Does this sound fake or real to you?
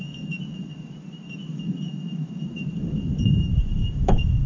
fake